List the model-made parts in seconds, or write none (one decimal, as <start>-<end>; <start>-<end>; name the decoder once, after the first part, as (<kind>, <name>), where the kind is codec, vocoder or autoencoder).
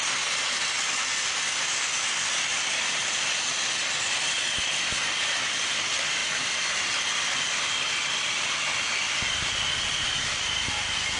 none